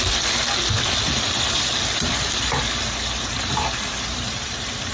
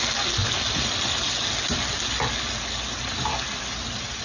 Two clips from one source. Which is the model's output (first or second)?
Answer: first